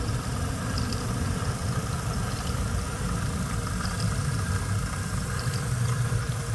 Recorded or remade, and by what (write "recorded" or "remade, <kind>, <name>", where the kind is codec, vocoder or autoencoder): remade, vocoder, BigVGAN v2